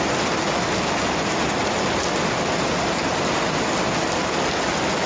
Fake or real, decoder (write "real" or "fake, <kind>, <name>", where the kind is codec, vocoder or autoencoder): real